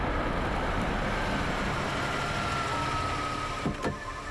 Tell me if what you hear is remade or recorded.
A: recorded